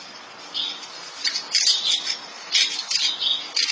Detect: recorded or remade recorded